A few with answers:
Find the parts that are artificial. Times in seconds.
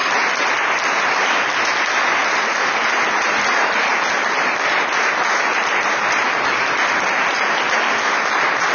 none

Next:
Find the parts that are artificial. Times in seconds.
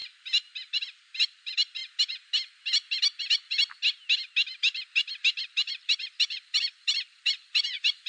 0.0-1.8 (vocoder, BigVGAN v2); 2.9-3.8; 4.6-8.1